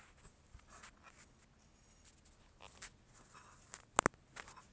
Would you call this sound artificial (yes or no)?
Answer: no